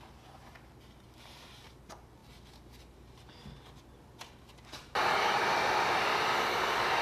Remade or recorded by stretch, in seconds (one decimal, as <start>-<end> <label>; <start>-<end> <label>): 0.0-7.0 recorded